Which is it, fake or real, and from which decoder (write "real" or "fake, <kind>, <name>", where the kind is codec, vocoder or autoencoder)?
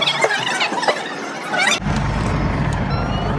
real